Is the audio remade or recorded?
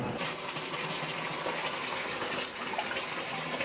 recorded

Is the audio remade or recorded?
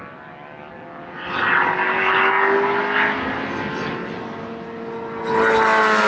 recorded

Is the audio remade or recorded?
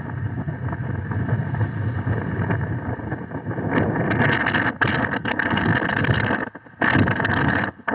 recorded